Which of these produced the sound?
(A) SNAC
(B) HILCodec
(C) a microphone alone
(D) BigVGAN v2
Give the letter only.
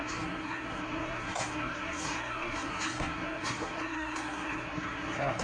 A